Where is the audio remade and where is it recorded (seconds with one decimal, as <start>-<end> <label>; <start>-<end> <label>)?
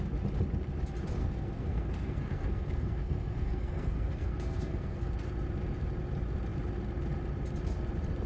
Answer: 0.0-1.2 recorded; 1.2-5.1 remade; 5.1-8.3 recorded